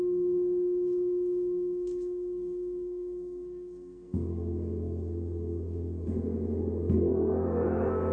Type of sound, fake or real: fake